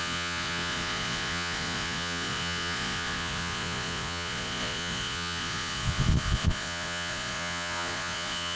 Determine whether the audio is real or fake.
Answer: fake